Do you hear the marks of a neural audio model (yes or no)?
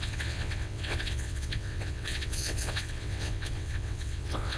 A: yes